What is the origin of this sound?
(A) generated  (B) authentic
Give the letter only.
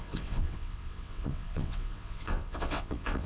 A